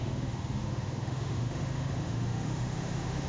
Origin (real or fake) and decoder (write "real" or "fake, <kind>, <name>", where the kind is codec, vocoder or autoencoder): fake, autoencoder, DAC-VAE